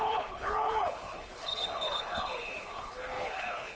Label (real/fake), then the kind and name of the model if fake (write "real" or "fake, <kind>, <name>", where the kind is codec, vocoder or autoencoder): fake, codec, HILCodec